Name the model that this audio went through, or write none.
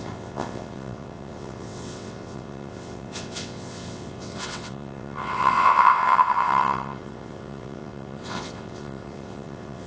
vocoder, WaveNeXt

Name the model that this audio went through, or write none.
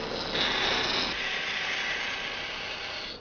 none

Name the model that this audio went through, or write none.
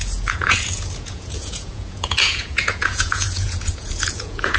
vocoder, Vocos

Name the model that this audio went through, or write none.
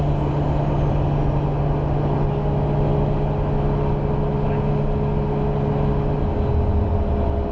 none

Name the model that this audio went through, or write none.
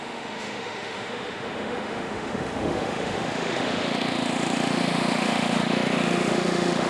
autoencoder, DAC-VAE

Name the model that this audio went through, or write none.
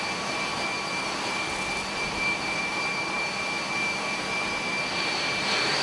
vocoder, BigVGAN v2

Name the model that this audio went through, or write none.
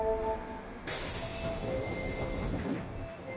none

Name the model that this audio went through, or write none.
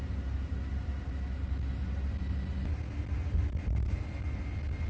none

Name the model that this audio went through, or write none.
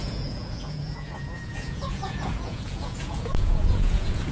vocoder, Vocos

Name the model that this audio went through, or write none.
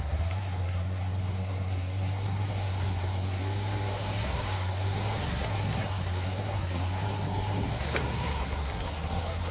codec, SNAC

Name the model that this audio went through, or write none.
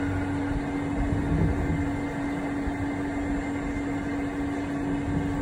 none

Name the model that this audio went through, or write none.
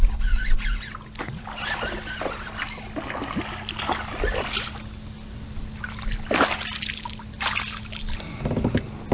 none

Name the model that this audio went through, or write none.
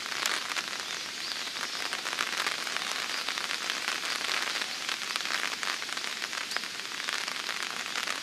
none